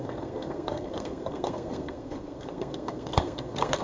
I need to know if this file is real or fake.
fake